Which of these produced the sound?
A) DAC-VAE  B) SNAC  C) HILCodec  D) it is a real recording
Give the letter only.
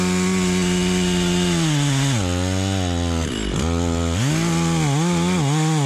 D